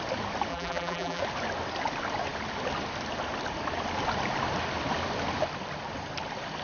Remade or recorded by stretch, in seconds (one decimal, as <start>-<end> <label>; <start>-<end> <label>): 0.0-0.5 recorded; 0.5-1.2 remade; 1.2-6.6 recorded

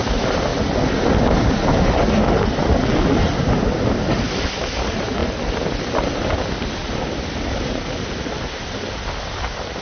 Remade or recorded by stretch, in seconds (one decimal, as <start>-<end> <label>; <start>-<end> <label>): 0.0-9.8 recorded

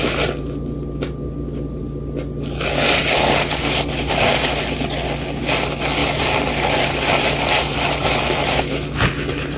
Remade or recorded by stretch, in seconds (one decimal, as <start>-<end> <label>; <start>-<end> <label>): 0.0-6.0 recorded; 6.0-8.6 remade; 8.6-9.6 recorded